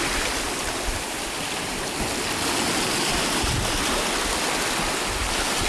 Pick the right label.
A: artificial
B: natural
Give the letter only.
B